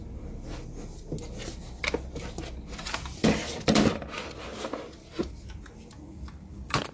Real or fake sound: real